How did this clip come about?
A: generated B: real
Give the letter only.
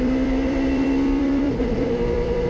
A